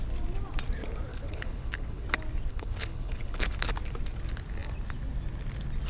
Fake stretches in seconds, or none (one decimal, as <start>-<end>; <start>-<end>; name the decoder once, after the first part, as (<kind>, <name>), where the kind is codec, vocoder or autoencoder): 1.1-2.0 (codec, HILCodec); 2.5-3.7